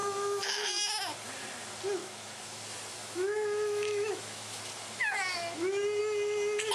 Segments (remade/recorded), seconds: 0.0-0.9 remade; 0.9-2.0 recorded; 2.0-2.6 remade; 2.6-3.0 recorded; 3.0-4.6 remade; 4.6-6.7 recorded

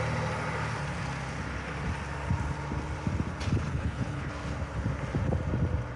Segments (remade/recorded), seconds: 0.0-3.7 recorded; 3.7-4.3 remade; 4.3-6.0 recorded

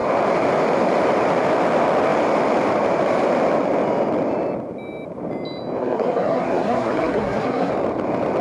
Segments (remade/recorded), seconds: 0.0-5.8 recorded; 5.8-7.7 remade; 7.7-8.4 recorded

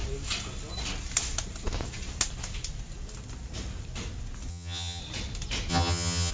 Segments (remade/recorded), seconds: 0.0-4.5 recorded; 4.5-5.0 remade; 5.0-5.7 recorded; 5.7-6.3 remade